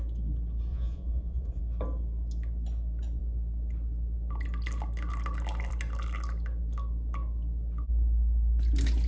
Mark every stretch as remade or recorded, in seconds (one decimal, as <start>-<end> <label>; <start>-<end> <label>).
0.0-0.7 recorded; 0.7-1.6 remade; 1.6-9.1 recorded